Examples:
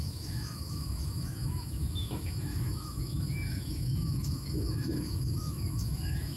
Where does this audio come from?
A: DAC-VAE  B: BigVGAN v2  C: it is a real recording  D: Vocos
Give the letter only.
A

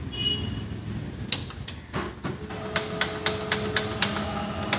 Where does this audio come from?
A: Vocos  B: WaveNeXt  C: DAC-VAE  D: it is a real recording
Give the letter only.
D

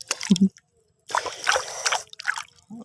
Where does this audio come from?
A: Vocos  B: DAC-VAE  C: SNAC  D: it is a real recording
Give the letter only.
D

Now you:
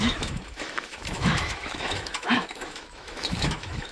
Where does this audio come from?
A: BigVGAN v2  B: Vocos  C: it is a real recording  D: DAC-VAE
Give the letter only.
D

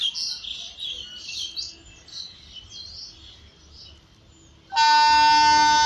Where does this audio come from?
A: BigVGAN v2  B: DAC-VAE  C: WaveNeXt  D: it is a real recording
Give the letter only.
D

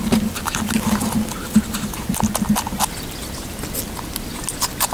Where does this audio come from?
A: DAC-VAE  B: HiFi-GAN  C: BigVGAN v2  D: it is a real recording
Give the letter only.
D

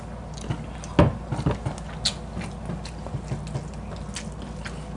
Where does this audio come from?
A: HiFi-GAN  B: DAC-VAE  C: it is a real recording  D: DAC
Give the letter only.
C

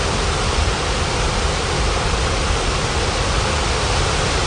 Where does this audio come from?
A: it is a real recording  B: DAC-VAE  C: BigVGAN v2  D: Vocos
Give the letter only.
A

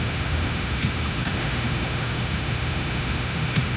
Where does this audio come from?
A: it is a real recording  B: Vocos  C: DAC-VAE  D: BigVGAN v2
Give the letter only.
C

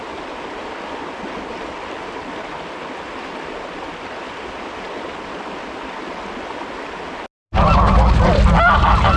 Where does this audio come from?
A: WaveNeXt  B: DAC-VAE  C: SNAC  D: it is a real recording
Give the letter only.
D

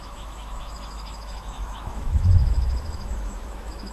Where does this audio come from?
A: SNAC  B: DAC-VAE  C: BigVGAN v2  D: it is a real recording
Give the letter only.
B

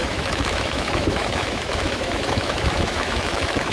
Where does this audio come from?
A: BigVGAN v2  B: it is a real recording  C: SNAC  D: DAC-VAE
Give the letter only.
D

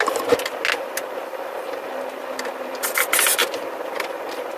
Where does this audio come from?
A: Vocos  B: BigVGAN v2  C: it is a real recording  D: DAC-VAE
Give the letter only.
C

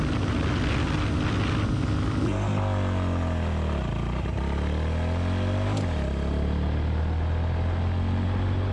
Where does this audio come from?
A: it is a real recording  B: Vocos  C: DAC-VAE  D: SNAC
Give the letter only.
A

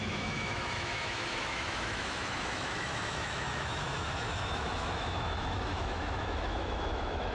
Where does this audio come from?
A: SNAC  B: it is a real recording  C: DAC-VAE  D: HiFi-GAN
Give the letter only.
C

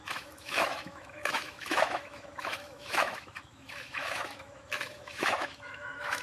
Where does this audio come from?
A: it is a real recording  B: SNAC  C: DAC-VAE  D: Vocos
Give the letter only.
C